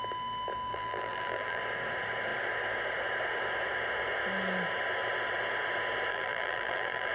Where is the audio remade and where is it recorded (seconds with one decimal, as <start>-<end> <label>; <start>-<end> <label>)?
0.0-0.7 recorded; 0.7-1.6 remade; 1.6-6.1 recorded; 6.1-7.1 remade